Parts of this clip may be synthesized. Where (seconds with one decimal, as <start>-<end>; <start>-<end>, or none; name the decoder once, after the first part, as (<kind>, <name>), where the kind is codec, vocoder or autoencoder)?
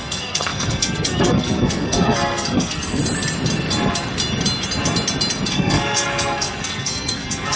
0.0-3.0 (codec, SNAC); 5.5-7.6